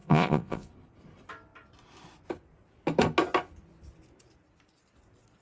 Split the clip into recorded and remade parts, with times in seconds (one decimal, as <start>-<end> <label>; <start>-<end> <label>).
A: 0.0-0.7 remade; 0.7-5.4 recorded